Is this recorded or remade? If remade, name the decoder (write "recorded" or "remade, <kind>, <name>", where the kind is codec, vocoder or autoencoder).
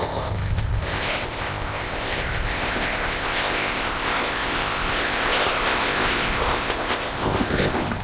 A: remade, codec, ZipCodec